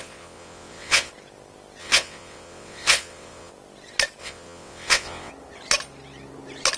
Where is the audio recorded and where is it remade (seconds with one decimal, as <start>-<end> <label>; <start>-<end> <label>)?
0.0-1.1 remade; 1.1-1.8 recorded; 1.8-3.5 remade; 3.5-4.2 recorded; 4.2-5.3 remade; 5.3-6.8 recorded